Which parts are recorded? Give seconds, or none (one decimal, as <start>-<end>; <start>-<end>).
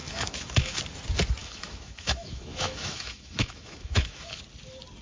0.8-1.4; 4.4-5.0